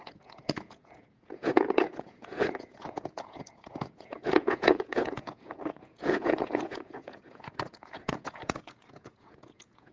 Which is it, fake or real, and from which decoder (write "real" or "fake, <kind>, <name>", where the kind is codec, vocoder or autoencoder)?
fake, vocoder, Vocos